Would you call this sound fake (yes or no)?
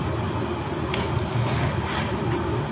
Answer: no